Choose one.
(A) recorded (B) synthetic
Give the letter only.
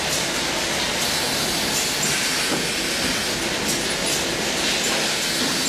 A